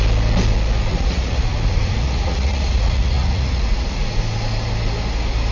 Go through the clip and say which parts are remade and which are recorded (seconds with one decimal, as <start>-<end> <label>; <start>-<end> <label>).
0.0-0.9 recorded; 0.9-4.2 remade; 4.2-5.5 recorded